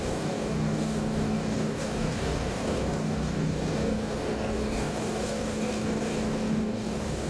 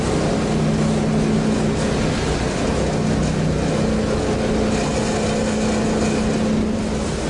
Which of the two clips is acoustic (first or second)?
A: second